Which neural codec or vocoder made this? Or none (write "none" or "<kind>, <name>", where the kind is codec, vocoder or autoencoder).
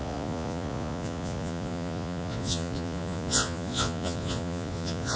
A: vocoder, Vocos